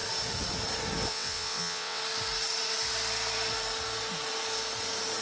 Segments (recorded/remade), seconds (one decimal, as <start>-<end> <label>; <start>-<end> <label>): 0.0-1.1 recorded; 1.1-2.0 remade; 2.0-5.2 recorded